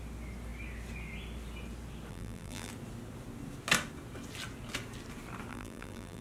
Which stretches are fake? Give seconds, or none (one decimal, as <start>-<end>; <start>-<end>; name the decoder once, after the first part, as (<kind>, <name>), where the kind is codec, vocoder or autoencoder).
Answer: 2.1-2.7 (vocoder, BigVGAN v2); 5.5-6.2